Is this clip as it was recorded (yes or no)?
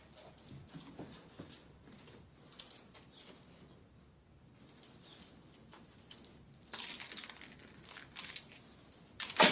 yes